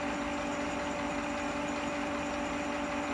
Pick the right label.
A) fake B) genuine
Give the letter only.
B